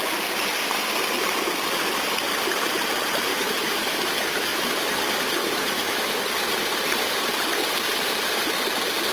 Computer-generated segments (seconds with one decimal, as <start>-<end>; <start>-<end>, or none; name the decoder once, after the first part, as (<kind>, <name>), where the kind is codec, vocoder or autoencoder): 3.3-4.9 (autoencoder, DAC-VAE); 5.4-6.2